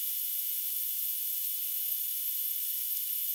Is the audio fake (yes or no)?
yes